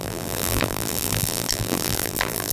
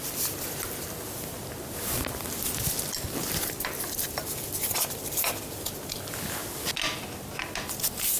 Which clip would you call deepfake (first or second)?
first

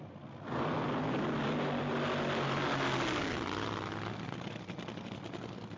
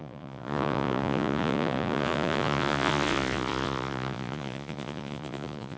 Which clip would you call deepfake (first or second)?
second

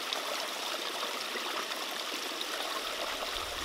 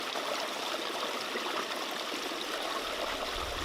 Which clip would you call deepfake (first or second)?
first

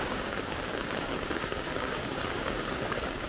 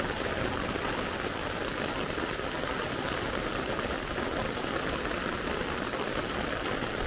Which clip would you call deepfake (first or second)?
first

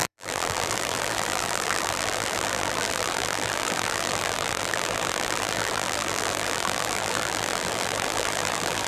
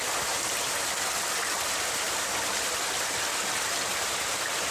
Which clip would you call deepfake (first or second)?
first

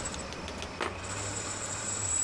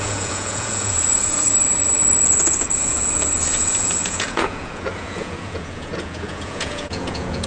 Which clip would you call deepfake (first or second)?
second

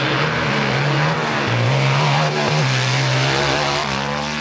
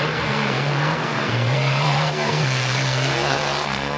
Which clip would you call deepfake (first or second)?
second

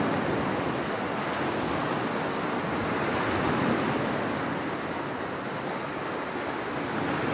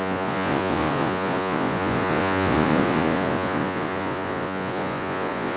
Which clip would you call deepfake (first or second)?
second